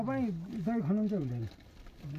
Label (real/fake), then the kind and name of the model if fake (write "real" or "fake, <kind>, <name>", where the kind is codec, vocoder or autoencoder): real